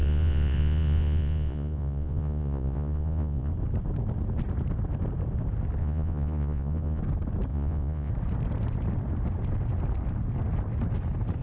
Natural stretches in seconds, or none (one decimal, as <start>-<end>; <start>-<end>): 3.5-5.8; 7.0-7.5; 8.1-11.4